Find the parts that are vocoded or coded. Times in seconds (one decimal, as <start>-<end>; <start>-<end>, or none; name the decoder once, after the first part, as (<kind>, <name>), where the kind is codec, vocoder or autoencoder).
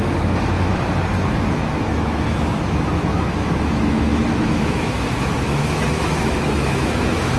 0.0-0.7 (autoencoder, DAC-VAE); 1.5-7.4